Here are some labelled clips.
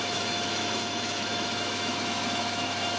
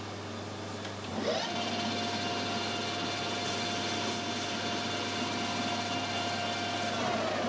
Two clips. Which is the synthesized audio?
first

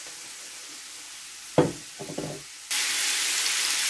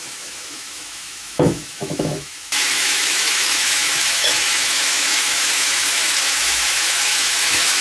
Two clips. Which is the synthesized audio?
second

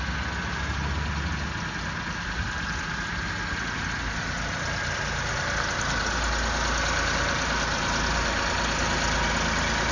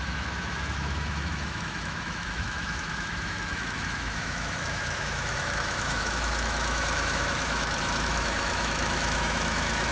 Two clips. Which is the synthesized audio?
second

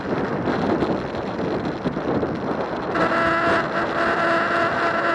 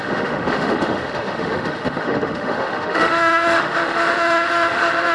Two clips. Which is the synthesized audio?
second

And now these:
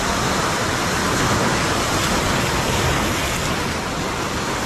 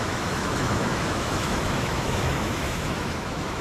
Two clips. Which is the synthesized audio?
second